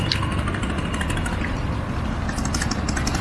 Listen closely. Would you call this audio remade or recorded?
recorded